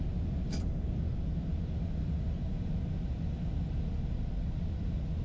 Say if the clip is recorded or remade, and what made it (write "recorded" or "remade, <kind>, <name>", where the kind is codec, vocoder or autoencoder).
recorded